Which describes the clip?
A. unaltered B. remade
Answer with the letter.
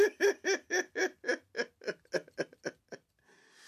A